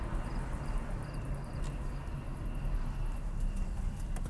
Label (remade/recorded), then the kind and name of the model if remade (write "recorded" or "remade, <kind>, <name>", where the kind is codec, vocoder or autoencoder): recorded